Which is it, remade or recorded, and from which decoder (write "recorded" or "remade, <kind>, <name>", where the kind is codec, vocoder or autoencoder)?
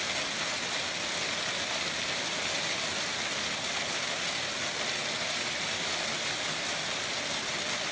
recorded